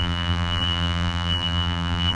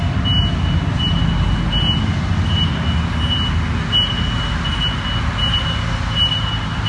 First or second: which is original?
second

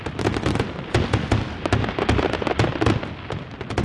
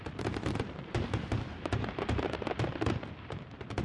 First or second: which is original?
first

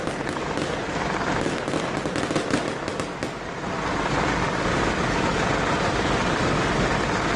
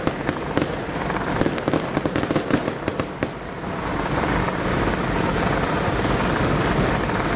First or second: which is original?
first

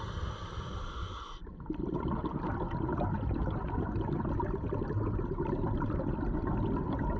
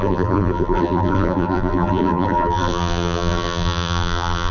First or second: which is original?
first